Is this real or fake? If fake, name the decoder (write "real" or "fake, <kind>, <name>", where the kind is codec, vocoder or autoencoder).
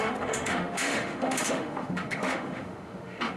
fake, autoencoder, DAC-VAE